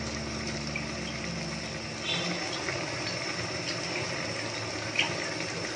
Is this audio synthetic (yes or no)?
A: no